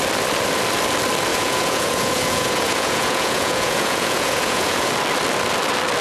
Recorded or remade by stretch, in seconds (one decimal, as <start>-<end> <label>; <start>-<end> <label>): 0.0-1.3 recorded; 1.3-4.9 remade; 4.9-6.0 recorded